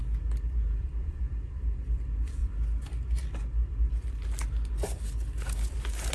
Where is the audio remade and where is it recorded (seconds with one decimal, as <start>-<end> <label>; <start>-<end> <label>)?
0.0-0.8 recorded; 0.8-6.1 remade